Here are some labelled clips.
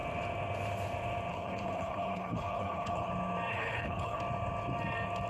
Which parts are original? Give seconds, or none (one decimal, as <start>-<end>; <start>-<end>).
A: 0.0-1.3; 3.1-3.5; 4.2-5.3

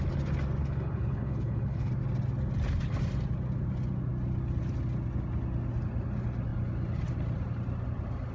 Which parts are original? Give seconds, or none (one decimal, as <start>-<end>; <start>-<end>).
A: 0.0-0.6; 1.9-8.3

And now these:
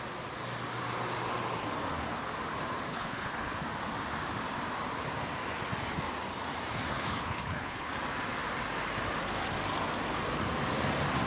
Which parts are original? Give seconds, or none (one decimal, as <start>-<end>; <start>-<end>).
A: 0.0-2.9; 3.6-6.9; 7.9-11.3

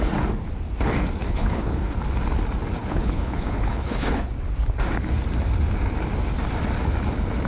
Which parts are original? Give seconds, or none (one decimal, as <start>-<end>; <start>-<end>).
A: 0.0-1.2; 2.0-2.8; 4.3-7.5